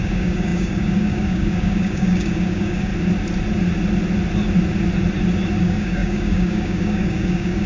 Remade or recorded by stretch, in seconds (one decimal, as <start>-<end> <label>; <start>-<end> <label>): 0.0-2.9 remade; 2.9-5.6 recorded; 5.6-7.7 remade